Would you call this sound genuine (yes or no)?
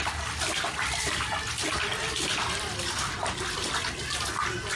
yes